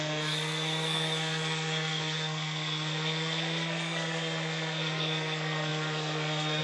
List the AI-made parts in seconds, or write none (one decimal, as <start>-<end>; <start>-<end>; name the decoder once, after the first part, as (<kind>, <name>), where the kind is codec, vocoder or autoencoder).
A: 0.0-6.6 (codec, SNAC)